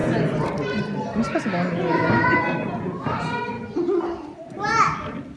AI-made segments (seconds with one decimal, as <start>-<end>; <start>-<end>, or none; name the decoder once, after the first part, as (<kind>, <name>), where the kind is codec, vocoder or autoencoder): none